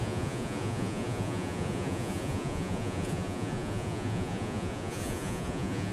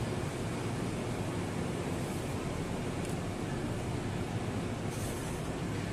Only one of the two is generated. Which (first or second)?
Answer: first